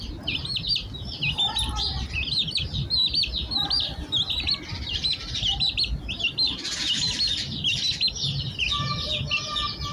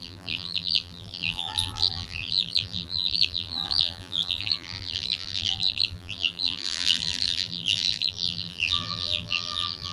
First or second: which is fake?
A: second